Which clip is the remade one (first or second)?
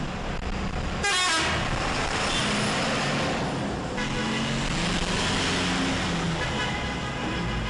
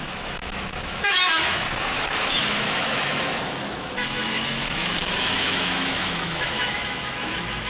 second